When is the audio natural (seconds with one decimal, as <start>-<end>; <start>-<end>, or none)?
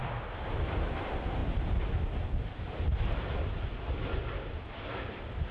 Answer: 0.0-5.5